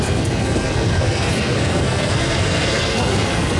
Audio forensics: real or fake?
fake